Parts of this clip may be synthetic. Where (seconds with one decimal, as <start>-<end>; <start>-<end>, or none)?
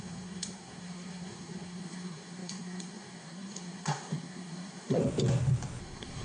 0.0-5.0; 5.8-6.2